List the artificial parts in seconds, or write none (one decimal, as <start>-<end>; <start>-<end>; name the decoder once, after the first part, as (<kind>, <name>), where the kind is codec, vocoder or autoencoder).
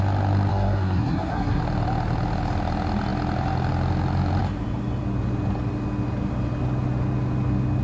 0.5-1.6 (codec, SNAC)